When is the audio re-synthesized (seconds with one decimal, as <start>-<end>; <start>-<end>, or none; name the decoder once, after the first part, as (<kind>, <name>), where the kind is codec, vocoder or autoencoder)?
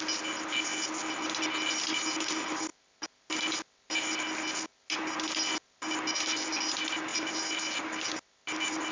none